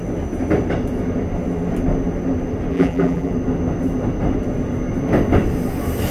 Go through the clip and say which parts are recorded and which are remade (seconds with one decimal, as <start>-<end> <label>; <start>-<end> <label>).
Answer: 0.0-2.7 recorded; 2.7-3.3 remade; 3.3-6.1 recorded